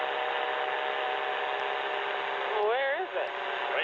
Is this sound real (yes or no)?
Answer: yes